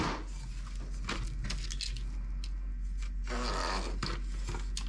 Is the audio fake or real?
real